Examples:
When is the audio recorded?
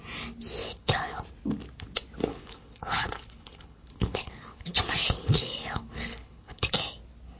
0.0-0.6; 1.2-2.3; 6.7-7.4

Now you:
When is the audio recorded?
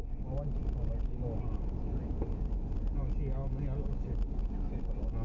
0.0-5.2